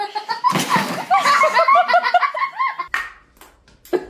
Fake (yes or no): no